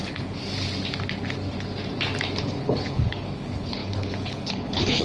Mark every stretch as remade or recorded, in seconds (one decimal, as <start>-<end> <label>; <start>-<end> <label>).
0.0-0.4 remade; 0.4-2.4 recorded; 2.4-5.0 remade